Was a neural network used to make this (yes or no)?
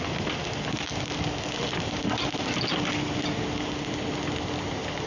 no